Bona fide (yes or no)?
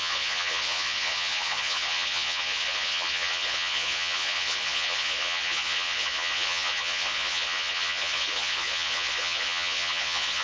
no